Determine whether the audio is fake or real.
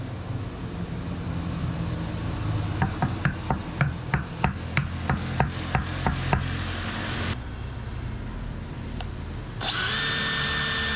real